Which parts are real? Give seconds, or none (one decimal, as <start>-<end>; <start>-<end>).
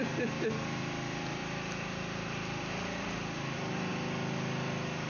3.9-5.1